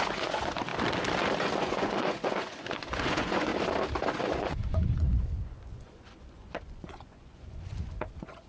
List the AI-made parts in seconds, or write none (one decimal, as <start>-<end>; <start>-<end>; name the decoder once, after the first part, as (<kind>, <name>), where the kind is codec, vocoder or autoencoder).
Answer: 0.0-0.7 (vocoder, Vocos); 1.6-3.5; 4.2-8.5